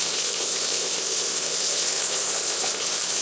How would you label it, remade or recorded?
remade